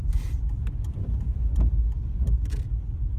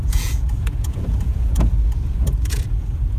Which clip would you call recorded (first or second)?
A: first